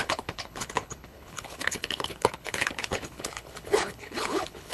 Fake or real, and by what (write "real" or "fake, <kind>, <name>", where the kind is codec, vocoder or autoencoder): fake, codec, HILCodec